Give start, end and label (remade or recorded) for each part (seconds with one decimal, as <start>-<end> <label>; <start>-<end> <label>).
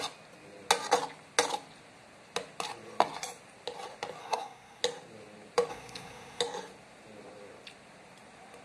0.0-4.2 recorded; 4.2-4.8 remade; 4.8-5.7 recorded; 5.7-6.4 remade; 6.4-8.6 recorded